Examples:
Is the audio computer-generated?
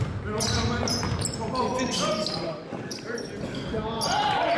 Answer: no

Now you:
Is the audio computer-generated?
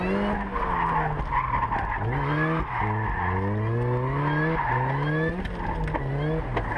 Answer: no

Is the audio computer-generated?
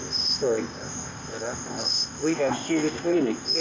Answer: yes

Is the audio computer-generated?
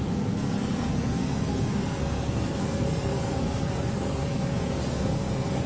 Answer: yes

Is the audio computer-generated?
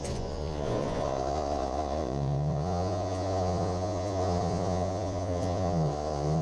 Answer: yes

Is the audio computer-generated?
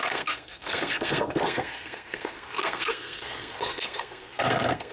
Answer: yes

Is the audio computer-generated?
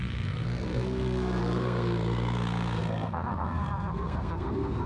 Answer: yes